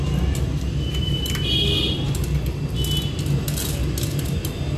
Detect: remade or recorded recorded